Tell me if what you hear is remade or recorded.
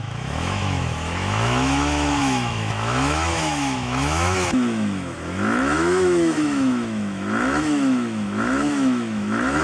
remade